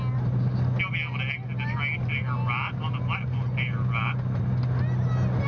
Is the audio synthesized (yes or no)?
no